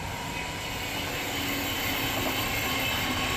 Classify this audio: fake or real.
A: real